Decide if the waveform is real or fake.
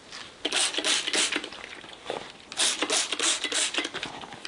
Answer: real